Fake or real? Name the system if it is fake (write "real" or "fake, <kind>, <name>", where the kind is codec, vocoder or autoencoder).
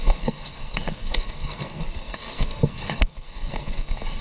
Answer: fake, codec, SNAC